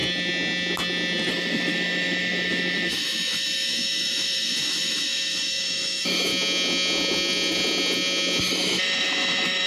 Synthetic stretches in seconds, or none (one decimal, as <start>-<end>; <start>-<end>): 1.3-6.3; 8.4-9.7